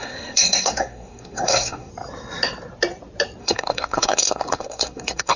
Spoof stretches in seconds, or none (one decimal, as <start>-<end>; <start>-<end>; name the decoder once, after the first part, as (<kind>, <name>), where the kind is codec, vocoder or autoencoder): 0.0-1.9 (codec, SNAC); 3.4-5.4

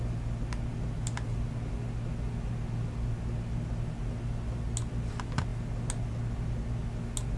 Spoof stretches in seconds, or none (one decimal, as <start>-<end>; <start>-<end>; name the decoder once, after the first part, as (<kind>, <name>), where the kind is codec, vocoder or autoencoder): none

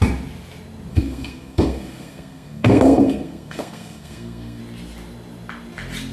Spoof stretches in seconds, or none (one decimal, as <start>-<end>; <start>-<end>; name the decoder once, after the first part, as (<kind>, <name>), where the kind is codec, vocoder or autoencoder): 0.9-4.6 (codec, SNAC)

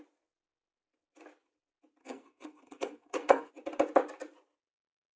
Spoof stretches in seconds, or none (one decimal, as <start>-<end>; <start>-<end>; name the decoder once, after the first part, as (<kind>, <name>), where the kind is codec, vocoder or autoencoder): 2.0-3.5 (codec, SNAC)

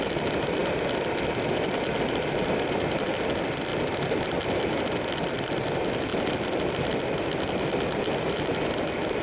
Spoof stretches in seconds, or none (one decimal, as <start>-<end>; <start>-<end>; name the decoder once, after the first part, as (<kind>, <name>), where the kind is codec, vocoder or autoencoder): none

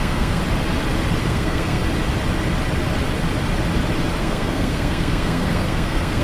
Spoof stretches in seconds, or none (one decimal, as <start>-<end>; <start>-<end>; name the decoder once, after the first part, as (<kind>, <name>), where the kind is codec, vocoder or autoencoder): 0.0-0.4 (codec, SNAC); 1.2-1.8; 4.2-6.2

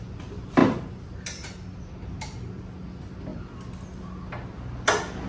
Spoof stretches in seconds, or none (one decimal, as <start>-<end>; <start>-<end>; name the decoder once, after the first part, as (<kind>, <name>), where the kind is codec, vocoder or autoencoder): none

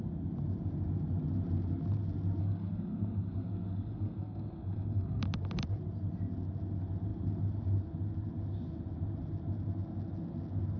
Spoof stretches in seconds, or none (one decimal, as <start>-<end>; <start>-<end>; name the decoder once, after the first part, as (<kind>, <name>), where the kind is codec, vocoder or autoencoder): 2.4-5.2 (codec, SNAC)